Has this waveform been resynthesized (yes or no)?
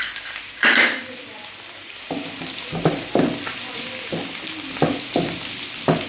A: no